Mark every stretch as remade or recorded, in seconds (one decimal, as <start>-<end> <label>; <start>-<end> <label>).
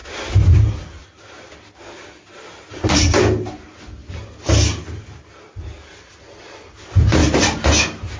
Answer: 0.0-8.2 recorded